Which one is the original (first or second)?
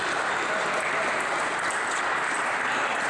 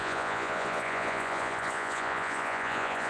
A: first